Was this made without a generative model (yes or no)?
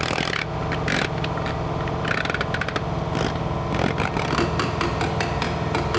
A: yes